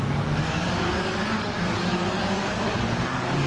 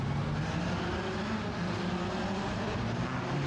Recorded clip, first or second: second